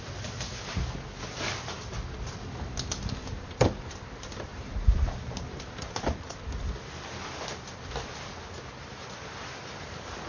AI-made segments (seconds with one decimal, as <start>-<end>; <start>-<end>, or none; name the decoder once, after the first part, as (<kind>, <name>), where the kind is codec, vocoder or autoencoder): 4.5-5.9 (vocoder, BigVGAN v2)